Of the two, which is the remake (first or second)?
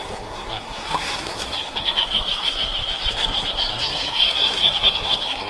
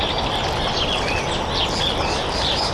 first